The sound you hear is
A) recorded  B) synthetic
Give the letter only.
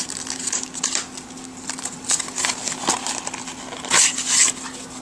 A